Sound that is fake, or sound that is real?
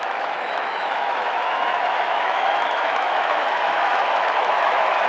fake